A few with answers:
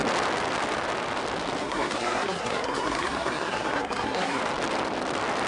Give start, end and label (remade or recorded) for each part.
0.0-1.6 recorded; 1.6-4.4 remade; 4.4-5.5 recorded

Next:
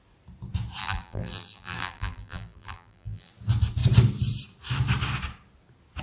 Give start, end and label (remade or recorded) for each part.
0.0-0.8 recorded; 0.8-3.3 remade; 3.3-6.0 recorded

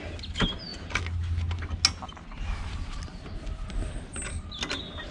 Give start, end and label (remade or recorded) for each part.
0.0-5.1 recorded

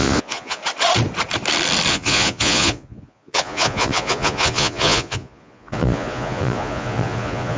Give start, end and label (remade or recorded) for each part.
0.0-0.6 remade; 0.6-1.9 recorded; 1.9-7.6 remade

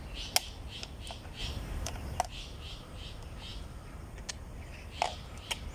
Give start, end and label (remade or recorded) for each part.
0.0-1.4 recorded; 1.4-2.2 remade; 2.2-5.7 recorded

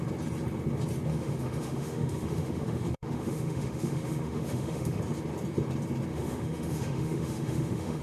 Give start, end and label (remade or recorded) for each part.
0.0-1.1 recorded; 1.1-5.0 remade; 5.0-6.1 recorded; 6.1-8.0 remade